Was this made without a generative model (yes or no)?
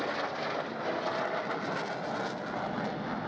yes